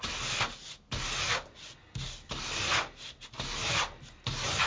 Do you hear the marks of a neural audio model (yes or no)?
no